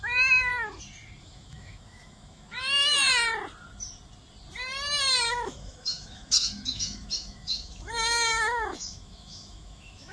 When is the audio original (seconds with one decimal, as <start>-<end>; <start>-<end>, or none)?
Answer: 0.5-1.2; 3.1-5.3